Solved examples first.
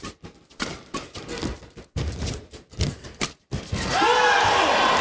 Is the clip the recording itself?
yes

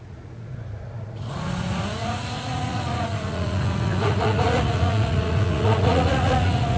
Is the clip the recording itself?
no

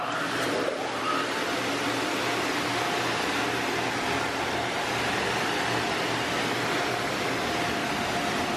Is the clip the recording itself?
yes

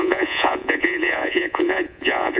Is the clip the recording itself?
no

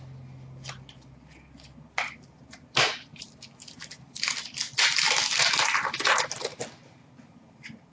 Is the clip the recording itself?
yes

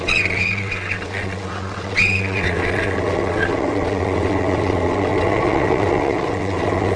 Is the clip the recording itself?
no